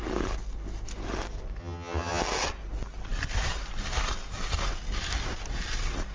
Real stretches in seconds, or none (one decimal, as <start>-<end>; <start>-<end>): 0.0-1.6; 2.2-6.1